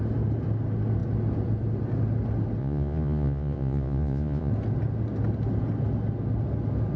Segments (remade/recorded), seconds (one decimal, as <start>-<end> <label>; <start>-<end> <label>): 0.0-2.6 recorded; 2.6-4.5 remade; 4.5-7.0 recorded